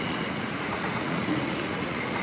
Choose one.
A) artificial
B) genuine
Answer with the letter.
A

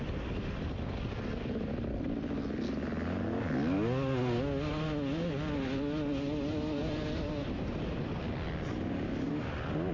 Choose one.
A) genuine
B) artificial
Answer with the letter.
A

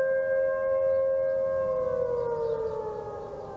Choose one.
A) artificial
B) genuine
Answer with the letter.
B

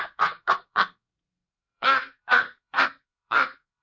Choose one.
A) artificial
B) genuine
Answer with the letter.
A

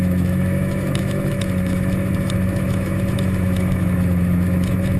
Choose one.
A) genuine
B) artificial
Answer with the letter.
B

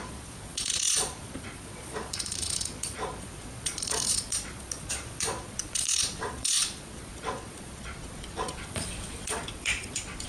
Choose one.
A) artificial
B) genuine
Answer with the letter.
A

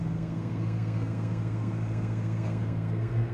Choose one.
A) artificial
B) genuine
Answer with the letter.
A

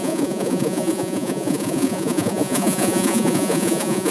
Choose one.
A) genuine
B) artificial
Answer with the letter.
B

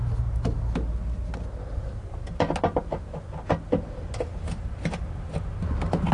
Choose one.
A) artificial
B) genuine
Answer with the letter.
B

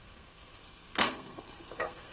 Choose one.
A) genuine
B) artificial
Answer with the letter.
B